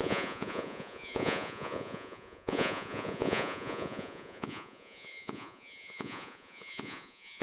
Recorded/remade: remade